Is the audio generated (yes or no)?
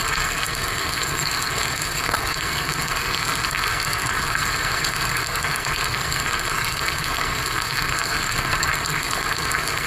yes